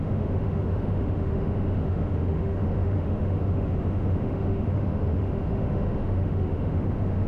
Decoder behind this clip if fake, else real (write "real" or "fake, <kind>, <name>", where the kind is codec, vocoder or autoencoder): fake, autoencoder, DAC-VAE